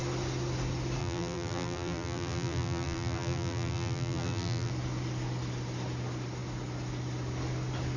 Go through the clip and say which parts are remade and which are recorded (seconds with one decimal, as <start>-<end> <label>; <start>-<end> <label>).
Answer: 0.0-1.0 recorded; 1.0-4.7 remade; 4.7-8.0 recorded